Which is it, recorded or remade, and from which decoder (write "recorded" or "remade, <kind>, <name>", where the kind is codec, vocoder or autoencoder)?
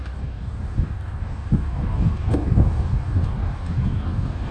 remade, codec, DAC